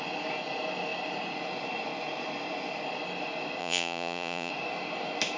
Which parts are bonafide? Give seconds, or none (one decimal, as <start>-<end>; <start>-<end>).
0.0-3.6; 4.5-5.4